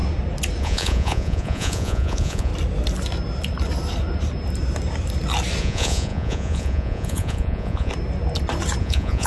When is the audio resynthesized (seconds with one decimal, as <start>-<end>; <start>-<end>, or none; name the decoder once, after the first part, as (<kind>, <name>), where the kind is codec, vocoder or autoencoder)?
0.6-2.5 (vocoder, Vocos); 5.6-7.9; 8.8-9.3

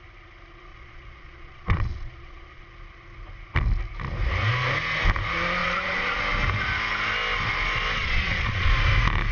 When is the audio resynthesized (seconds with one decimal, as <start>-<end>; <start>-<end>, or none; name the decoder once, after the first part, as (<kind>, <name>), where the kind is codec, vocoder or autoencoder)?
0.7-2.6 (vocoder, Vocos); 5.6-6.2; 8.0-8.7

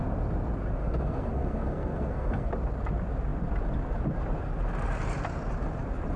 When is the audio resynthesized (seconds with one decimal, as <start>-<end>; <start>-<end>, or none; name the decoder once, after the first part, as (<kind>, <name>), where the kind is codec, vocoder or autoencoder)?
0.8-2.5 (codec, SNAC)

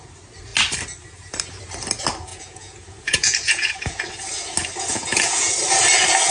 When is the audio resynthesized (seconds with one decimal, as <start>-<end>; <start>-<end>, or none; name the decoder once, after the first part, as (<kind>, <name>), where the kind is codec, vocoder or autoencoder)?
2.3-4.0 (vocoder, Vocos); 4.9-5.5

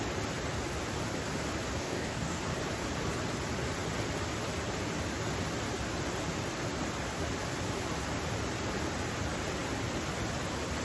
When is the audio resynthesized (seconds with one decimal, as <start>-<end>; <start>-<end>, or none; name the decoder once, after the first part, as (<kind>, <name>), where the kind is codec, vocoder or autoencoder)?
1.8-2.4 (codec, DAC)

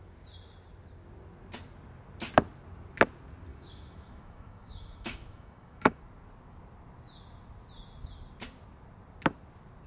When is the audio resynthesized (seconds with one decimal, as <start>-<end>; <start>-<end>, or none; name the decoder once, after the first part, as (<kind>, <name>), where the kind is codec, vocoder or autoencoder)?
3.5-6.0 (autoencoder, DAC-VAE)